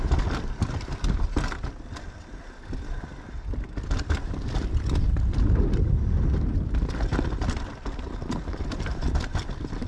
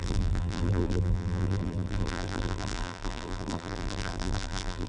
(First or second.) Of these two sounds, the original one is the first